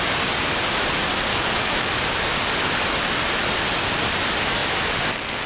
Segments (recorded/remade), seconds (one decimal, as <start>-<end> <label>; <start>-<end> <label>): 0.0-1.3 recorded; 1.3-1.9 remade; 1.9-5.5 recorded